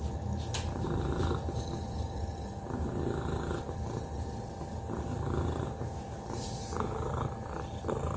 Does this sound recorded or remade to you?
recorded